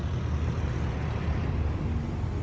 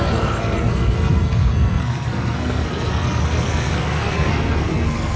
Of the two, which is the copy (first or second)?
second